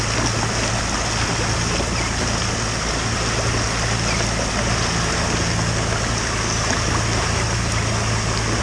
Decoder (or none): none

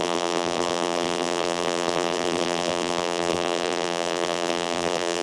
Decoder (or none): vocoder, BigVGAN v2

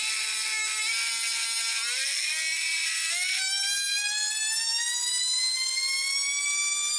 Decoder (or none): none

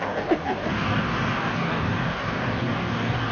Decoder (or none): codec, DAC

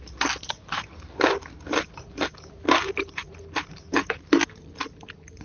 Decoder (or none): none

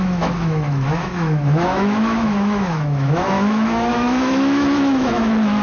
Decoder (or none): autoencoder, DAC-VAE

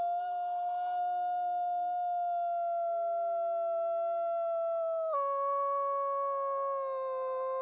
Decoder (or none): none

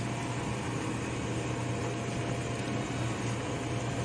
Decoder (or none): none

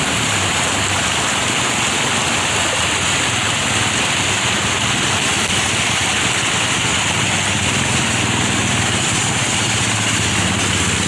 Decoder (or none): none